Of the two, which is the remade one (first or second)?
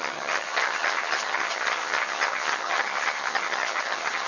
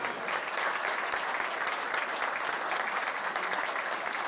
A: first